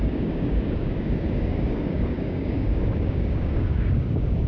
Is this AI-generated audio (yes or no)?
yes